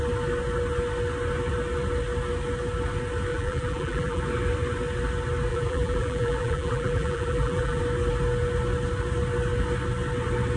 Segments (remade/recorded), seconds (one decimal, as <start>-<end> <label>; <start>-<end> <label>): 0.0-3.3 recorded; 3.3-4.2 remade; 4.2-5.5 recorded; 5.5-7.8 remade; 7.8-10.6 recorded